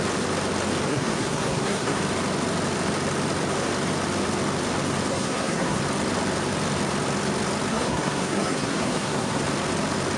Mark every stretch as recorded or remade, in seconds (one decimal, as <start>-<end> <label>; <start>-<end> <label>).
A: 0.0-0.9 recorded; 0.9-2.0 remade; 2.0-5.1 recorded; 5.1-5.8 remade; 5.8-7.7 recorded; 7.7-9.4 remade; 9.4-10.2 recorded